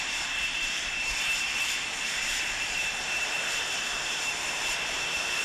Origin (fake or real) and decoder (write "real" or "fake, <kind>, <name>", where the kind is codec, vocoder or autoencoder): fake, vocoder, BigVGAN v2